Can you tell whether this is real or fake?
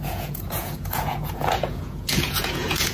fake